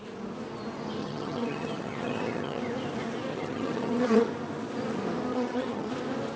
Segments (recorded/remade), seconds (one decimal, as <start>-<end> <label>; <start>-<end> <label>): 0.0-1.0 recorded; 1.0-2.6 remade; 2.6-3.3 recorded; 3.3-4.3 remade; 4.3-5.3 recorded; 5.3-5.9 remade; 5.9-6.4 recorded